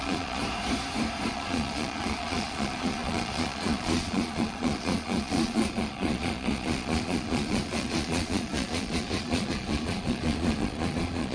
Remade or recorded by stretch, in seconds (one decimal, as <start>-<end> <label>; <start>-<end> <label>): 0.0-0.4 remade; 0.4-1.3 recorded; 1.3-11.3 remade